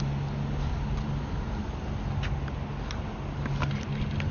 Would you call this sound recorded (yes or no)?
yes